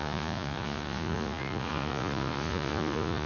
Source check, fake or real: fake